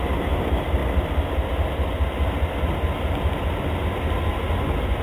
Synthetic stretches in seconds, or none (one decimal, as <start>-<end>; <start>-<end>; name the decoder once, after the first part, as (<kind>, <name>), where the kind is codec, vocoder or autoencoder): none